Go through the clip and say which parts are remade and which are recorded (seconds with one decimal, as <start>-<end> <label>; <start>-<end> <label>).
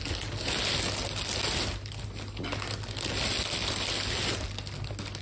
0.0-5.2 recorded